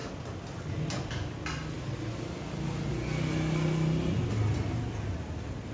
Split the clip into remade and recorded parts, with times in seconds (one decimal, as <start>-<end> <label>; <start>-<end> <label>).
0.0-5.7 recorded